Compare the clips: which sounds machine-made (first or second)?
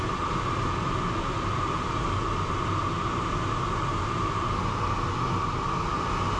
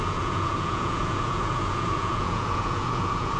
second